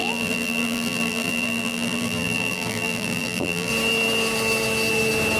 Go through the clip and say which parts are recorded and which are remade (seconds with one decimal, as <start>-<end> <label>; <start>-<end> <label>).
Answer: 0.0-3.7 remade; 3.7-5.4 recorded